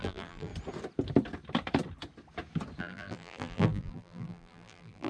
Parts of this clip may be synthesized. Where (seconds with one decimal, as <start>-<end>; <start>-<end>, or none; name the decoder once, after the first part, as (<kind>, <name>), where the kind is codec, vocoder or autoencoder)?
0.0-0.5 (vocoder, BigVGAN v2); 2.8-5.1